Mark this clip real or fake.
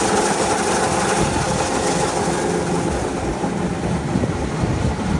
real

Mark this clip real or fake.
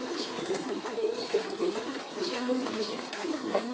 fake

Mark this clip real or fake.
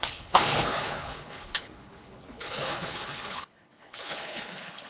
fake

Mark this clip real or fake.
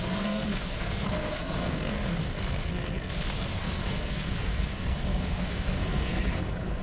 fake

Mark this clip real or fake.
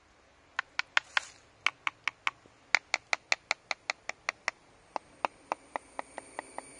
real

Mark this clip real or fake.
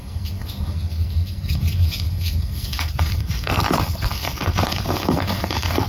fake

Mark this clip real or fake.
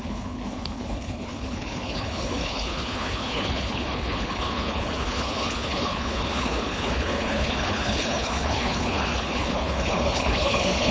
fake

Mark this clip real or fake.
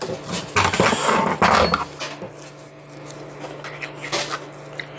real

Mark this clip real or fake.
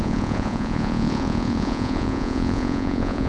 fake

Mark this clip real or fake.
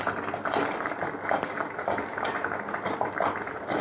real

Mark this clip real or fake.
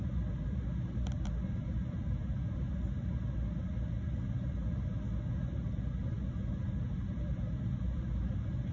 real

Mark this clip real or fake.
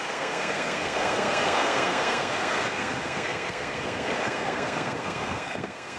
fake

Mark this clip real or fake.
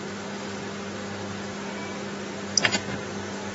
real